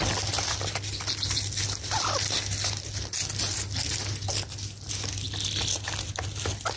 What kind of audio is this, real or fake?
real